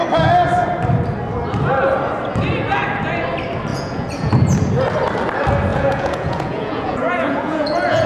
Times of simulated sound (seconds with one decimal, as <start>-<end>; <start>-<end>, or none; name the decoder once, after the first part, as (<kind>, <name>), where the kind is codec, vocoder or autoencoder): 3.7-4.3 (vocoder, Vocos); 5.7-8.1